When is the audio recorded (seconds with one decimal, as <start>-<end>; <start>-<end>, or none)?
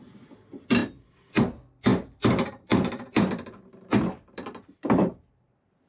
none